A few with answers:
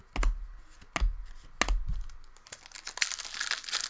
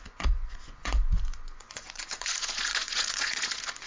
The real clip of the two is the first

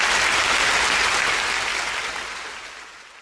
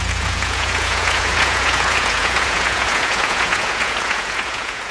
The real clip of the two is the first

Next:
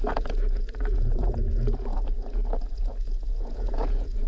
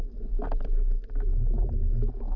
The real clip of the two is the second